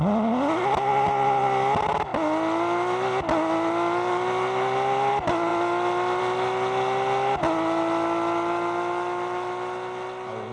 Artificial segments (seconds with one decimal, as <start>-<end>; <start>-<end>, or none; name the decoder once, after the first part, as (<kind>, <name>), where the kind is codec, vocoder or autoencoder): none